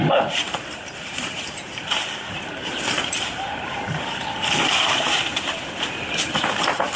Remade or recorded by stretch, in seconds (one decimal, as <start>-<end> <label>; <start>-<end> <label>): 0.0-5.3 remade; 5.3-6.3 recorded; 6.3-7.0 remade

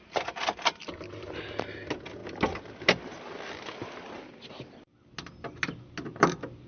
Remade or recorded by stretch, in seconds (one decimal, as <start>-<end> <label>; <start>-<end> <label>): 0.0-6.7 recorded

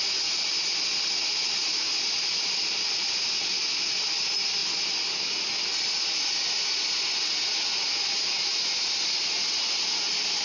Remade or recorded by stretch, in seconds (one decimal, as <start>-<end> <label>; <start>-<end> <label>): 0.0-10.4 recorded

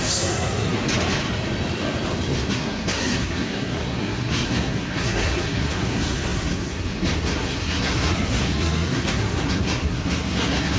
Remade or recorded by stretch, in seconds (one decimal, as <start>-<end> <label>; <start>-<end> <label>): 0.0-0.8 remade; 0.8-2.5 recorded; 2.5-10.8 remade

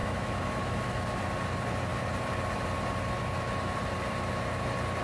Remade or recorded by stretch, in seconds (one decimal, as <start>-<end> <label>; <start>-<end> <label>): 0.0-1.2 remade; 1.2-5.0 recorded

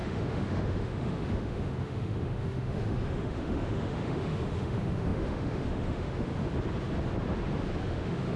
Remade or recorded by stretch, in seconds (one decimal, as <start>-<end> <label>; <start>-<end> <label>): 0.0-6.3 remade; 6.3-7.8 recorded; 7.8-8.4 remade

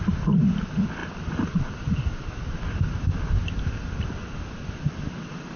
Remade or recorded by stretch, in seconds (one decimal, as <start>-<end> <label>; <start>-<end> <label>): 0.0-5.6 recorded

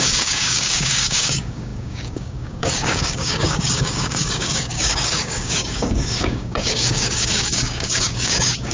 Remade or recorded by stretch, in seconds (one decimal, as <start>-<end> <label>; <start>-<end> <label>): 0.0-8.7 remade